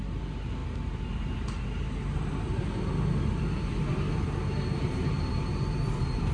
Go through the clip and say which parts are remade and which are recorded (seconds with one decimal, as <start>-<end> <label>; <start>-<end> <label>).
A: 0.0-6.3 recorded